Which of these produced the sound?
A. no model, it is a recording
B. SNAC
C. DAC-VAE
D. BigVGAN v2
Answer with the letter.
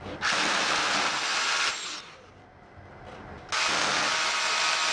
A